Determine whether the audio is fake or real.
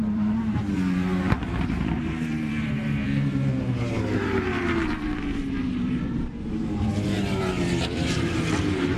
fake